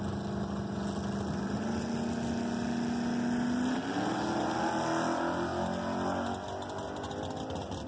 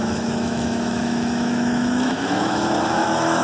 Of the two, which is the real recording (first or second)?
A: first